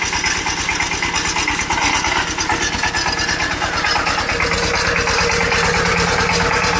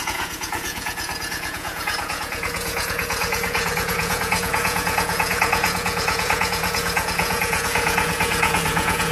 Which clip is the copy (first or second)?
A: second